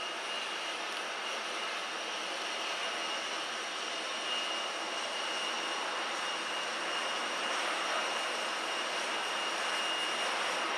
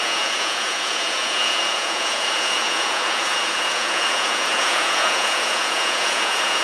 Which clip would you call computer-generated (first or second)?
second